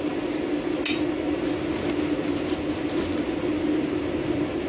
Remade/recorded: recorded